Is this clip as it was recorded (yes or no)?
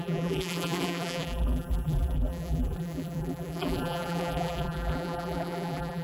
no